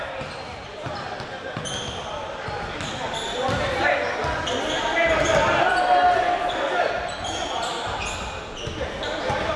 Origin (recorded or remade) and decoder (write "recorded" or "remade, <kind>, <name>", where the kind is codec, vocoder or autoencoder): recorded